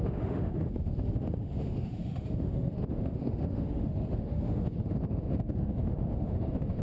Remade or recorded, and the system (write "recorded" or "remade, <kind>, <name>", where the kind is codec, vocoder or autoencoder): remade, autoencoder, DAC-VAE